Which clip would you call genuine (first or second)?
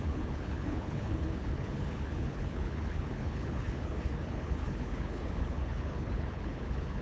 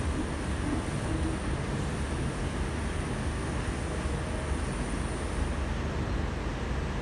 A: second